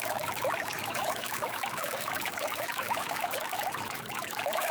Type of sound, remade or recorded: remade